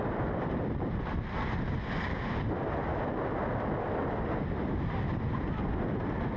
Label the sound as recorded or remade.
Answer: recorded